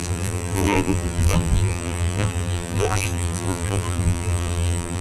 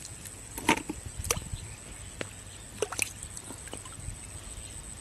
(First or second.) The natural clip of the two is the second